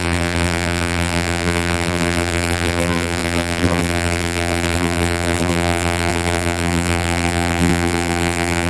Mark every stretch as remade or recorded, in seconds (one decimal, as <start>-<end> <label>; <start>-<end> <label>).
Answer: 0.0-8.7 remade